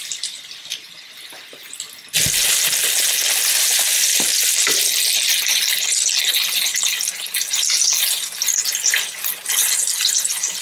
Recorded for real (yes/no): yes